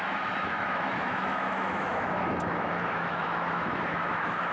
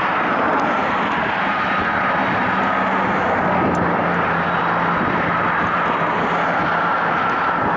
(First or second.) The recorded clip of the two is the second